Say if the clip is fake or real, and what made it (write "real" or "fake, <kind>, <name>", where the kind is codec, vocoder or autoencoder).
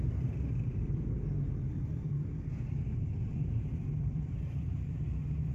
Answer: fake, vocoder, BigVGAN v2